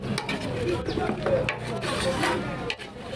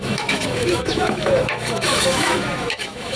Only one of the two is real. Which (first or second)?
first